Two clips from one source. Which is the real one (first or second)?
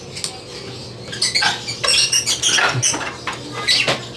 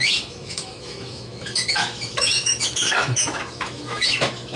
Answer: first